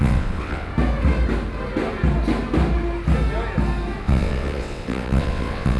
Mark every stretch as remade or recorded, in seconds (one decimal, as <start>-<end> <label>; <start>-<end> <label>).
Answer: 0.0-0.7 remade; 0.7-4.0 recorded; 4.0-5.8 remade